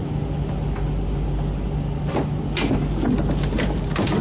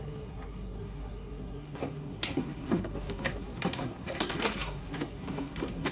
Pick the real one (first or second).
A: first